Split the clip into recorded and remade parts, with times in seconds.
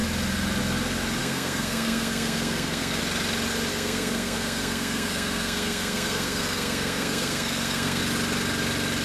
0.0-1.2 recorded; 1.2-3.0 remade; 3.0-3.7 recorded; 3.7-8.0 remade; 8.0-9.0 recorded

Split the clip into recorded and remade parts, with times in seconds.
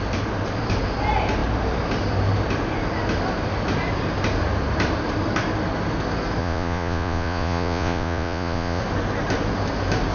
0.0-6.4 recorded; 6.4-8.8 remade; 8.8-10.1 recorded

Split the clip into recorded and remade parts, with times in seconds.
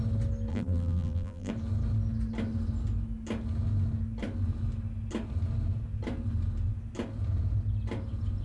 0.0-0.5 recorded; 0.5-1.5 remade; 1.5-8.4 recorded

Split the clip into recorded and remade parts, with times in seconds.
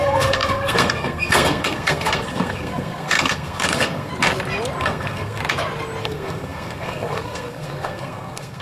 0.0-4.1 remade; 4.1-4.8 recorded; 4.8-5.4 remade; 5.4-6.0 recorded; 6.0-8.6 remade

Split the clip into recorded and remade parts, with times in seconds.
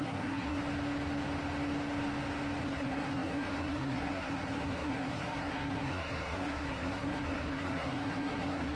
0.0-0.6 remade; 0.6-2.6 recorded; 2.6-8.8 remade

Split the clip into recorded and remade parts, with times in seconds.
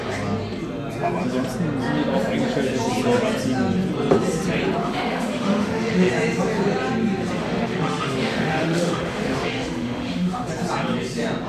0.0-4.8 recorded; 4.8-6.1 remade; 6.1-7.4 recorded; 7.4-10.5 remade; 10.5-11.5 recorded